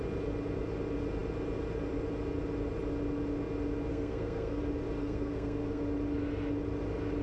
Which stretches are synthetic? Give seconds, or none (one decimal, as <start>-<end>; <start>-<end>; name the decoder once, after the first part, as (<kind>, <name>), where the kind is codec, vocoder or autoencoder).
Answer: 3.9-4.6 (codec, SNAC); 5.0-5.8